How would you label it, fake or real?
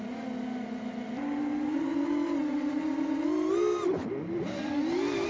real